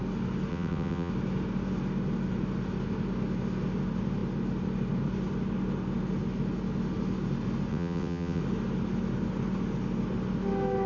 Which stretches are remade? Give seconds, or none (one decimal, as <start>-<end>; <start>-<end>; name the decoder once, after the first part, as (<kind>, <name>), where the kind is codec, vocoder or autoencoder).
0.5-1.1 (vocoder, WaveNeXt); 7.7-8.4